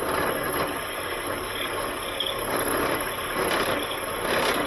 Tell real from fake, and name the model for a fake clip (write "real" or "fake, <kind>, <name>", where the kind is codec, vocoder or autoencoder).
real